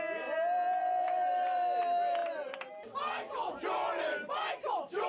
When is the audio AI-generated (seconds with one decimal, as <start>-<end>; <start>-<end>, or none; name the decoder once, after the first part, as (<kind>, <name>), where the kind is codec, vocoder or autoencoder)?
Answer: 0.8-1.8 (vocoder, BigVGAN v2); 2.2-2.7